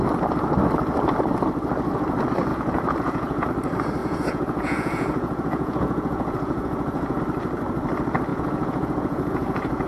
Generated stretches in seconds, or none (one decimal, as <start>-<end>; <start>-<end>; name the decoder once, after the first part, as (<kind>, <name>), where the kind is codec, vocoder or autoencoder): 2.5-3.5 (vocoder, Vocos); 4.0-7.2; 8.3-9.9